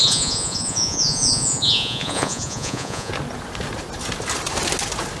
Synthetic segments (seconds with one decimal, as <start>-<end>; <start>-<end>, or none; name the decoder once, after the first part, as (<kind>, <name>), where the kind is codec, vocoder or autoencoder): 0.0-3.1 (vocoder, Vocos)

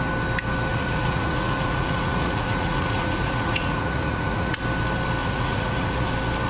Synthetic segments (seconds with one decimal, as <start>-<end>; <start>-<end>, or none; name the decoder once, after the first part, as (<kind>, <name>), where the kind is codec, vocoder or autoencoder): 0.7-4.6 (vocoder, Vocos); 5.2-6.1

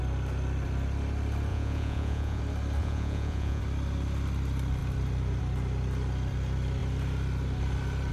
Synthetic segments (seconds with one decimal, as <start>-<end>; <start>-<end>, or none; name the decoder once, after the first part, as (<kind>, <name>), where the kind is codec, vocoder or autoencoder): 1.5-2.4 (vocoder, Vocos); 2.8-3.6

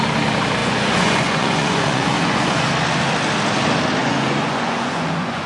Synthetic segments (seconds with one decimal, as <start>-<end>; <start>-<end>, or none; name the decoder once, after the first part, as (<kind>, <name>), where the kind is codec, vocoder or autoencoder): 0.6-2.7 (vocoder, Vocos); 4.0-5.5

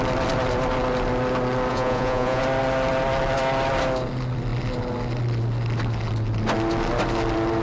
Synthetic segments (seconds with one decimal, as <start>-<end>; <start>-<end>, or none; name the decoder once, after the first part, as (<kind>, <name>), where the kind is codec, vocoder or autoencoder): 1.7-2.4 (vocoder, Vocos)

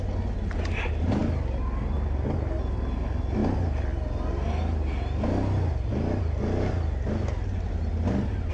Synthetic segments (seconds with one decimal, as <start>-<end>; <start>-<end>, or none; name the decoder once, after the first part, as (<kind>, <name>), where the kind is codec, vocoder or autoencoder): none